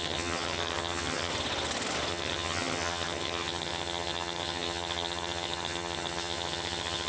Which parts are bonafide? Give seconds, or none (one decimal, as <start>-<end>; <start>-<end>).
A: 1.3-2.1